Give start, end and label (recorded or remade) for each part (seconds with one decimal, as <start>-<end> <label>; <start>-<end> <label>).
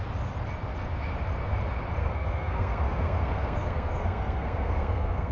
0.0-2.0 recorded; 2.0-5.3 remade